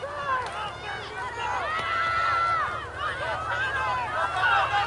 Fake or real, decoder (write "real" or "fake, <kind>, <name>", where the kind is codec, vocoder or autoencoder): real